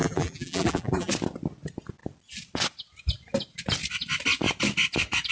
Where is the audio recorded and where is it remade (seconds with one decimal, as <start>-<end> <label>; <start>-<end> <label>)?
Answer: 0.0-1.1 remade; 1.1-5.3 recorded